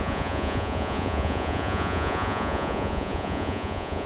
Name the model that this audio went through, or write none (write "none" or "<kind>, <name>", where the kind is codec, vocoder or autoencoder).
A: vocoder, Vocos